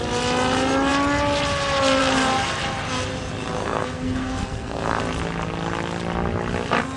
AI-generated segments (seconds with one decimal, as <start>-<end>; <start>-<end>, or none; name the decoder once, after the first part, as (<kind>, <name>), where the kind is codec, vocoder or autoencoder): 3.6-5.0 (codec, SNAC)